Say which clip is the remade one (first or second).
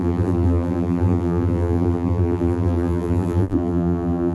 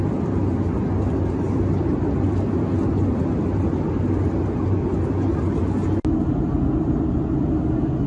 first